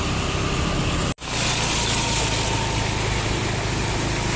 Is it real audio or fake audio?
real